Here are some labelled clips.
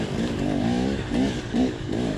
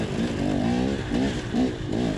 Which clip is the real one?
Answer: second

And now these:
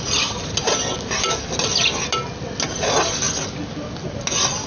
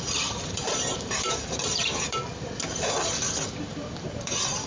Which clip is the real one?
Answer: first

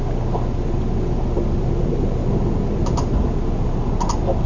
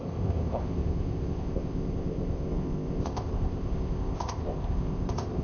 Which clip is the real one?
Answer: first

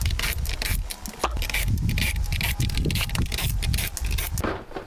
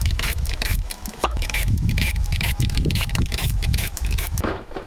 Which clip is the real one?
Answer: first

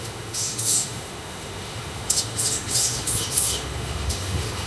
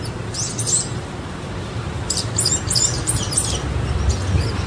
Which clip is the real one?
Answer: second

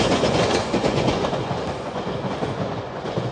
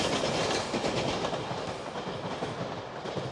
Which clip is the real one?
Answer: second